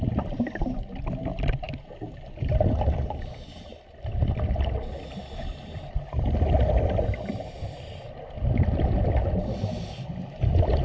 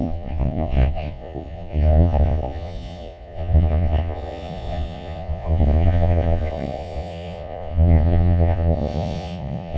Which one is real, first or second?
first